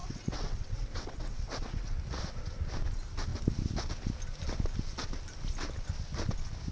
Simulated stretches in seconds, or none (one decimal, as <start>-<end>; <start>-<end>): 0.0-1.9